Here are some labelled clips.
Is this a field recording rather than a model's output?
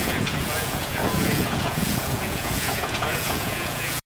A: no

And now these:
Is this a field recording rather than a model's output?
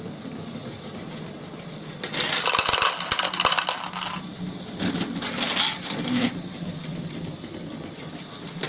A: yes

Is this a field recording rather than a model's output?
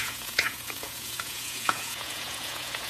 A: no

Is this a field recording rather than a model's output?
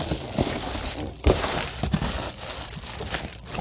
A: yes